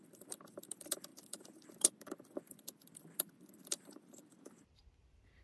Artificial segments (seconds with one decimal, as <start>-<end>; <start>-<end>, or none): 0.0-5.4